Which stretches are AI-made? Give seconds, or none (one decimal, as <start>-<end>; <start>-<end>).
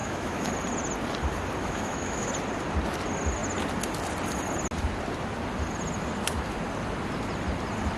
0.0-0.5; 1.6-2.3